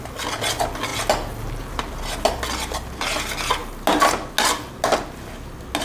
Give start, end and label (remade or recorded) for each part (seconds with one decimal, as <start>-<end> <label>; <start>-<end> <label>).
0.0-5.8 recorded